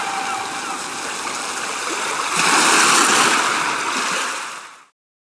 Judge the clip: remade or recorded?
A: recorded